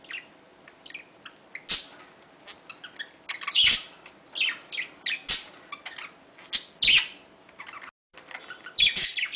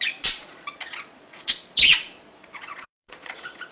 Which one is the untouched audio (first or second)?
first